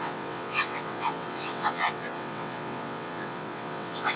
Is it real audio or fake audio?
fake